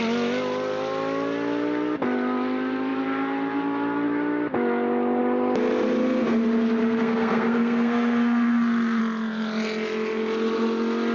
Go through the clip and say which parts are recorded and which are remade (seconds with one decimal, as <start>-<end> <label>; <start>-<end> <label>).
0.0-6.8 recorded; 6.8-9.0 remade; 9.0-11.1 recorded